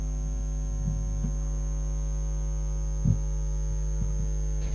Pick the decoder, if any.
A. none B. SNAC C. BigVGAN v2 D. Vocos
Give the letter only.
A